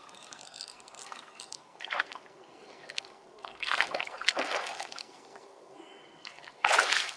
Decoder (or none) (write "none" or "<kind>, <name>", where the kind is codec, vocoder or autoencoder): codec, SNAC